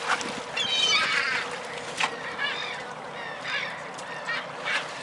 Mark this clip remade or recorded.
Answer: recorded